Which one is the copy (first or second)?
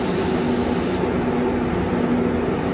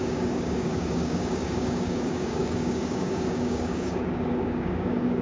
second